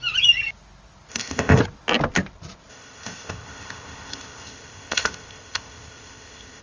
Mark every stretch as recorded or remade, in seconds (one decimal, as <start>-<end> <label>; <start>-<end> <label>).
0.0-1.1 recorded; 1.1-1.6 remade; 1.6-2.7 recorded; 2.7-6.6 remade